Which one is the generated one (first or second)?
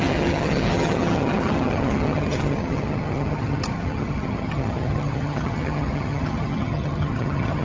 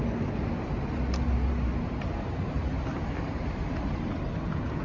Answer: first